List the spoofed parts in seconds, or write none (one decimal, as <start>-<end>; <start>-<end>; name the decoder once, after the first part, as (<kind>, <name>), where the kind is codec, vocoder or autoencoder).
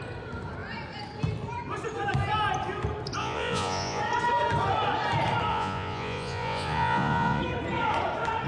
3.2-4.0 (vocoder, Vocos); 5.5-7.4